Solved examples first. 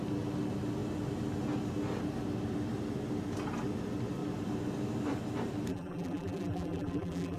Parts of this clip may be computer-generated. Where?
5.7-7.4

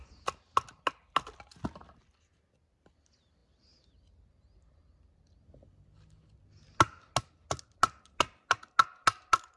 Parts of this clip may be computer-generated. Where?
none

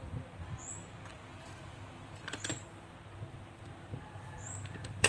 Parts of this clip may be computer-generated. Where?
1.1-2.9; 3.3-5.1

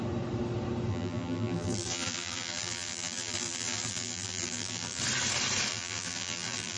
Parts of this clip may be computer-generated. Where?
0.9-5.0; 5.7-6.8

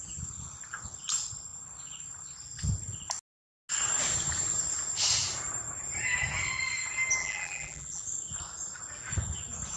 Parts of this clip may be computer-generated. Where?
7.2-8.0